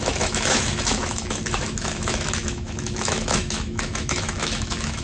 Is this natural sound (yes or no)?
no